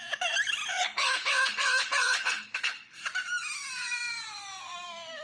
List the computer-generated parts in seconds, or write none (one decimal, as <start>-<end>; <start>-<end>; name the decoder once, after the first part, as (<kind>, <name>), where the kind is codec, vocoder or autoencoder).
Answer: 0.7-3.0 (codec, HILCodec)